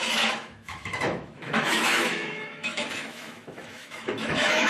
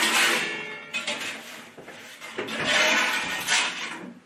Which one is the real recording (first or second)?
second